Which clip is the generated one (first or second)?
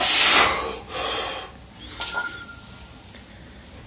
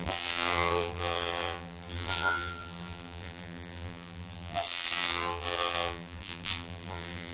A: second